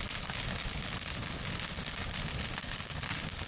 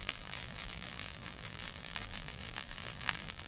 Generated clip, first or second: second